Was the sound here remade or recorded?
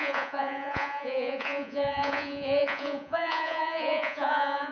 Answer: remade